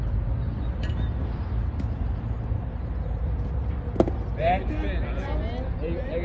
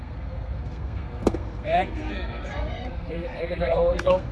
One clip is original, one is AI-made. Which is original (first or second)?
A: first